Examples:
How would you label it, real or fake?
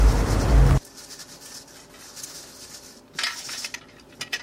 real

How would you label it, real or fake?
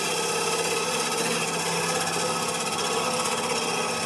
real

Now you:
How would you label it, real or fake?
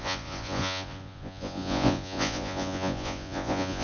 fake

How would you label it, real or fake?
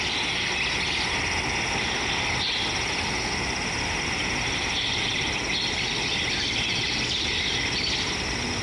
real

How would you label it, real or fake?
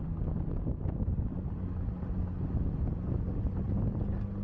real